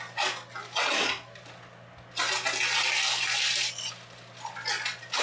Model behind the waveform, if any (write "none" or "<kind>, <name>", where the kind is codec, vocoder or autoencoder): none